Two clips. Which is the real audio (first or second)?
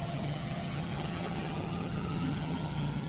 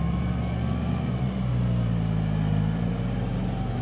second